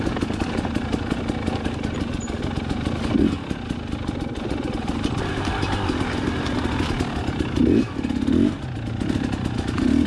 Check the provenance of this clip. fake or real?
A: real